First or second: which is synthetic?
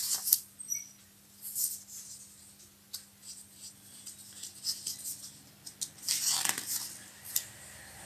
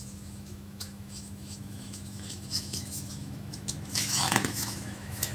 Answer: second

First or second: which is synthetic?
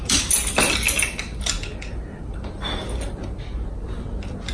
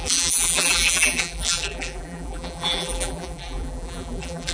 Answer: second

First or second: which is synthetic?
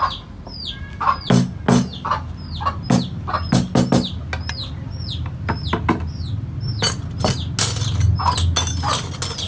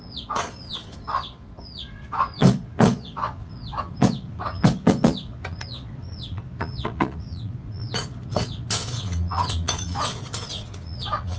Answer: second